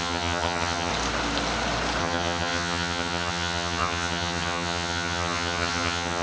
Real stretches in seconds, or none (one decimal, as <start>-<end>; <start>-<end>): 0.9-2.0